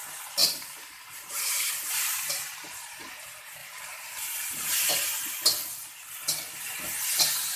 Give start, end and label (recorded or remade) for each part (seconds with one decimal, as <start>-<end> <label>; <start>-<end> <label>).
0.0-0.4 recorded; 0.4-3.1 remade; 3.1-3.6 recorded; 3.6-4.9 remade; 4.9-7.6 recorded